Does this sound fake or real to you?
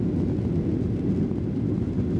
real